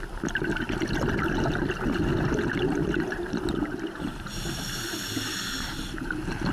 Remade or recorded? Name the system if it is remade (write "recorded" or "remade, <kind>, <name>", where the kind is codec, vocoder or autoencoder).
recorded